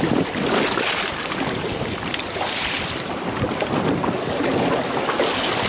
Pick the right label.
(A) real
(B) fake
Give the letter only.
A